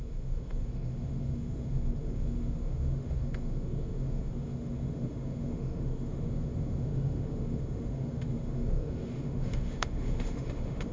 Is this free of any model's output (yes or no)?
no